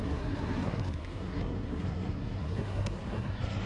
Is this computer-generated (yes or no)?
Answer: yes